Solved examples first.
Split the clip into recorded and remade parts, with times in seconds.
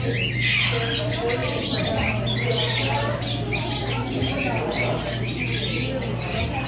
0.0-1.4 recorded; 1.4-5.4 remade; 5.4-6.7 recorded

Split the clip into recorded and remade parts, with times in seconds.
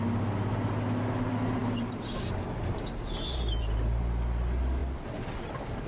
0.0-5.9 recorded